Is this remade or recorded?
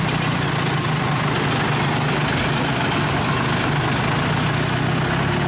recorded